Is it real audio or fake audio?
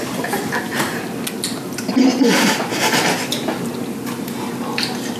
real